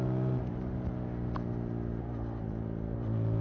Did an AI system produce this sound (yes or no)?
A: no